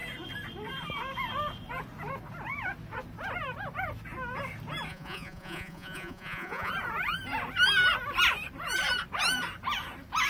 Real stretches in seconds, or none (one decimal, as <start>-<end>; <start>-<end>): 0.0-4.9; 6.7-10.3